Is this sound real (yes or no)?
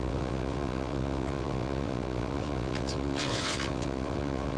no